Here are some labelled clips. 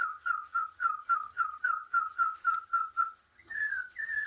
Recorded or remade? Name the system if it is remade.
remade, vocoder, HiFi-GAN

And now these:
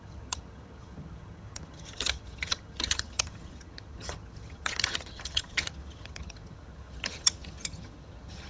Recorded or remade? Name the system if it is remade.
remade, vocoder, HiFi-GAN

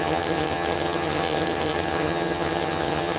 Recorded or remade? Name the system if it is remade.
remade, vocoder, HiFi-GAN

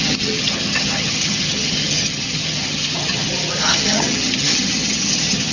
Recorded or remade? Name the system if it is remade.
remade, vocoder, HiFi-GAN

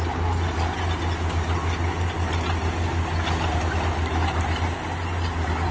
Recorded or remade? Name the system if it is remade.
recorded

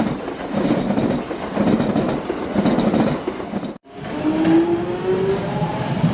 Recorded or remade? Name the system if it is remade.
recorded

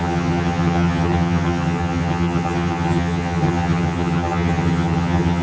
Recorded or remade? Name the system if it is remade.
remade, vocoder, HiFi-GAN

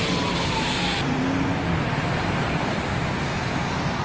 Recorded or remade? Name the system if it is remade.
recorded